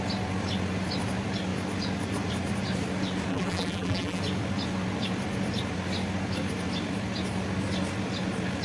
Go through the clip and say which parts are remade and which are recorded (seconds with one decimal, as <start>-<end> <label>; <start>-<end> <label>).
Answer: 0.0-3.3 recorded; 3.3-4.2 remade; 4.2-8.6 recorded